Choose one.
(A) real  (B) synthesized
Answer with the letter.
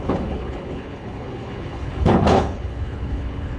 B